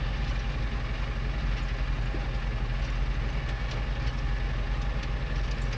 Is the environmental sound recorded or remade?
recorded